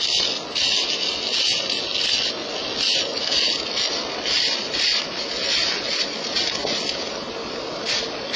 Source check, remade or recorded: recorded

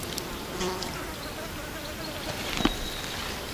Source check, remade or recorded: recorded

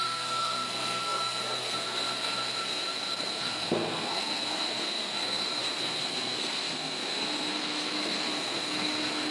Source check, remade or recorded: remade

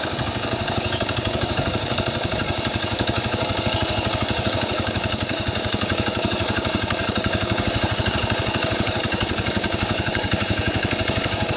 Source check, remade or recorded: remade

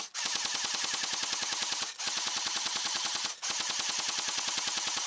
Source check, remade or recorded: remade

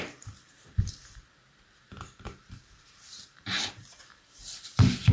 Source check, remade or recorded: remade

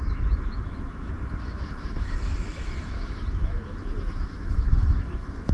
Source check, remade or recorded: remade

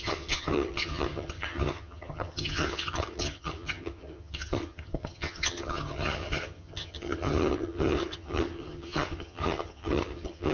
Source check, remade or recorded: remade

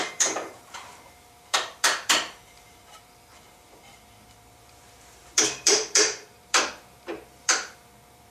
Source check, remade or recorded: remade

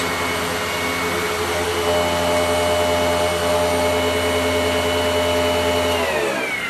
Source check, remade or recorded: recorded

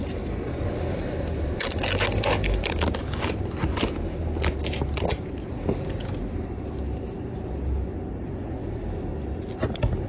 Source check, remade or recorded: recorded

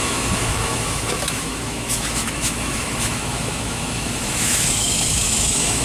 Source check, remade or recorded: remade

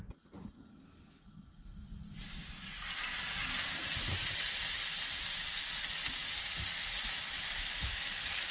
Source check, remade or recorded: recorded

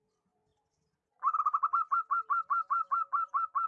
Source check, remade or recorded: recorded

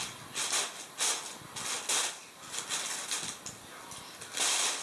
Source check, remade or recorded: recorded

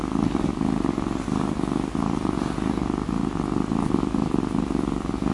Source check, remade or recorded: recorded